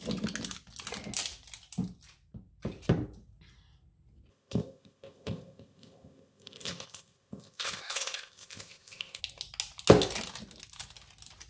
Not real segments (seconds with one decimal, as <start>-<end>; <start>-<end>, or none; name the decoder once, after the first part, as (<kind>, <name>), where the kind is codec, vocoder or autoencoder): 4.3-9.2 (codec, ZipCodec)